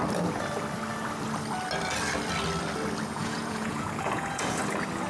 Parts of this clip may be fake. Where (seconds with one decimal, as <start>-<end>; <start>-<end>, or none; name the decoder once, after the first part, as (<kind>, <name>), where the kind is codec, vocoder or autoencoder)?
3.1-4.6 (vocoder, Vocos)